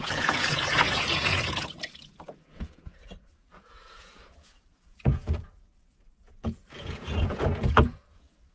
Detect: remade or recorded remade